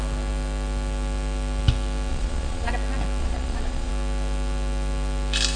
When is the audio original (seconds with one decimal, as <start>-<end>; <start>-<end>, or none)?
0.0-2.1; 2.7-3.2; 3.9-5.6